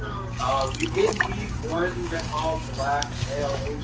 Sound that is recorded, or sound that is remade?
remade